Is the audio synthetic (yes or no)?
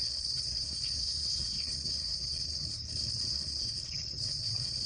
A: yes